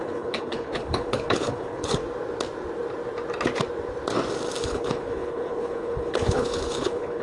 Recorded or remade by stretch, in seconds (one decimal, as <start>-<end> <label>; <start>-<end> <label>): 0.0-2.0 remade; 2.0-4.6 recorded; 4.6-7.2 remade